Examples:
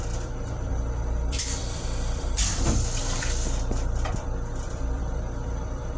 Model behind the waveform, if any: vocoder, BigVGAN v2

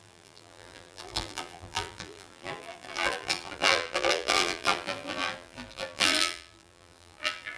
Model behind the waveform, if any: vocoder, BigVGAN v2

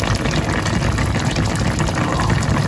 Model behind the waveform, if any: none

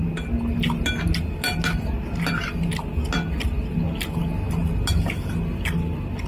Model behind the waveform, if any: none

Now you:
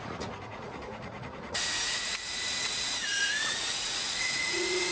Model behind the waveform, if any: vocoder, Vocos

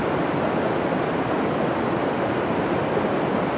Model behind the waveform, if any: none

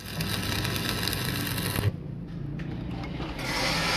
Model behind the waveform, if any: none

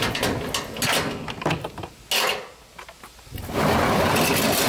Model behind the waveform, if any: none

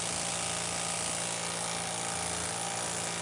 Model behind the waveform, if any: none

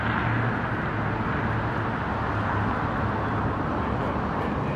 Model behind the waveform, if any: none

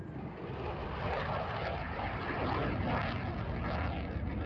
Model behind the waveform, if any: none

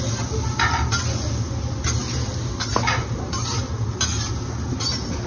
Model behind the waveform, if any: none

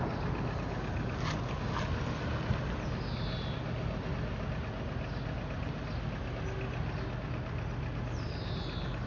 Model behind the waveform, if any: none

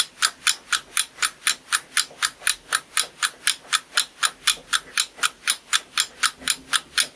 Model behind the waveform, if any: none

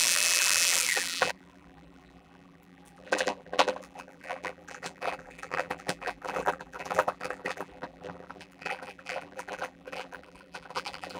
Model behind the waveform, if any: vocoder, BigVGAN v2